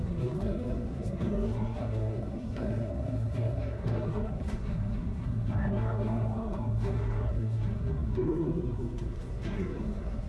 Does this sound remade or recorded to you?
remade